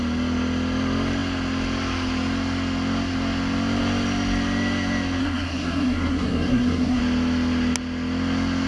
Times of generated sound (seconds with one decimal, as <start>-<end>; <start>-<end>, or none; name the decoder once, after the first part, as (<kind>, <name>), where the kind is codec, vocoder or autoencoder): 5.2-7.0 (codec, SNAC)